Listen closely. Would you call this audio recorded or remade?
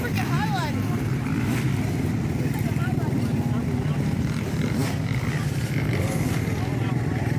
remade